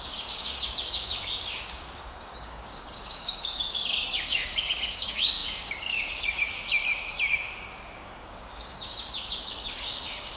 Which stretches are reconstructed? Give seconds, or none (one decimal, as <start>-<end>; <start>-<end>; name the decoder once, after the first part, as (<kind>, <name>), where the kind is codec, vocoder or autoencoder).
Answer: 0.0-10.4 (codec, DAC)